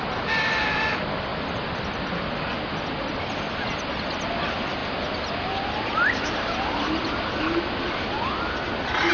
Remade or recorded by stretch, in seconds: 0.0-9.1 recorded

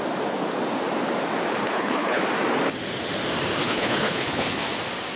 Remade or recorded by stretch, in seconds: 0.0-1.6 recorded; 1.6-2.2 remade; 2.2-3.6 recorded; 3.6-4.6 remade; 4.6-5.2 recorded

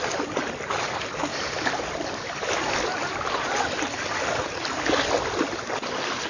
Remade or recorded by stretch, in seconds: 0.0-6.3 recorded

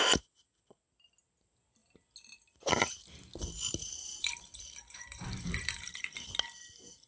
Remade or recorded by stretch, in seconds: 0.0-3.8 recorded; 3.8-6.4 remade; 6.4-7.1 recorded

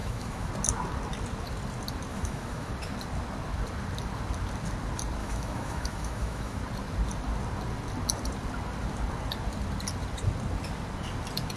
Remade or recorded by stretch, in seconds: 0.0-0.5 remade; 0.5-2.1 recorded; 2.1-2.7 remade; 2.7-5.2 recorded; 5.2-6.6 remade; 6.6-11.6 recorded

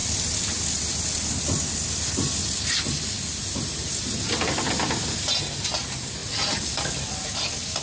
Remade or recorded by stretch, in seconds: 0.0-7.8 recorded